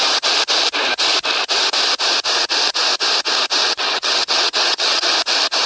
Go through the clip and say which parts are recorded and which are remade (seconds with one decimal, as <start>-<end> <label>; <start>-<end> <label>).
0.0-3.6 recorded; 3.6-5.0 remade; 5.0-5.7 recorded